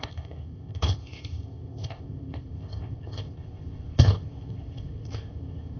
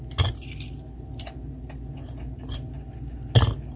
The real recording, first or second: second